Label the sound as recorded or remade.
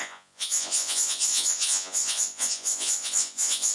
remade